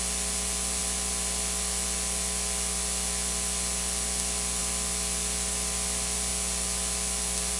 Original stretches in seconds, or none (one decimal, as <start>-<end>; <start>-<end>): 0.0-7.6